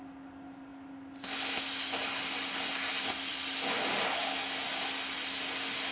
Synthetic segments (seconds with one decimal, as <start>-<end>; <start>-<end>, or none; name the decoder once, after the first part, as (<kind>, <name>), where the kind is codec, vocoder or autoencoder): none